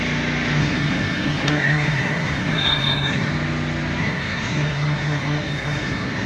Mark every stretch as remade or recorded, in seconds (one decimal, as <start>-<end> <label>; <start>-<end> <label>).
0.0-0.6 recorded; 0.6-3.3 remade; 3.3-4.0 recorded; 4.0-6.3 remade